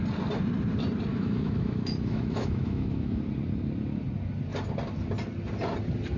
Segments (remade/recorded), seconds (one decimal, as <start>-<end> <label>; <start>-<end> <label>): 0.0-1.1 recorded; 1.1-3.2 remade; 3.2-6.2 recorded